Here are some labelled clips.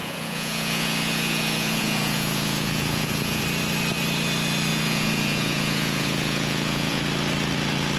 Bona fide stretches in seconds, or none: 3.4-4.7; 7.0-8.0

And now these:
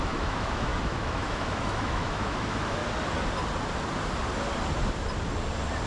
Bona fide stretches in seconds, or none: 2.8-5.9

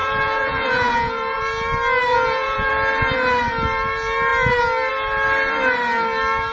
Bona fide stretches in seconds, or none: 1.4-2.1; 2.7-6.5

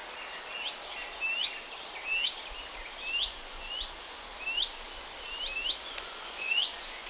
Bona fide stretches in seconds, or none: 0.0-3.2; 4.3-5.8